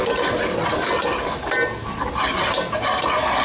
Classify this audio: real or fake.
real